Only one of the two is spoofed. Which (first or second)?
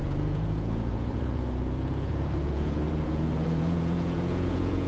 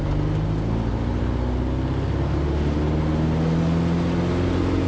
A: first